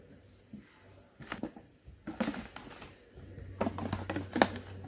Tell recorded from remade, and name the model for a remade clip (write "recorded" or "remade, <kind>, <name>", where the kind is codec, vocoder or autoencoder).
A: recorded